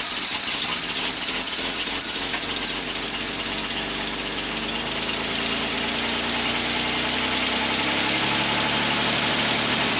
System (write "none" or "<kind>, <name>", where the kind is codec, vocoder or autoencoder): none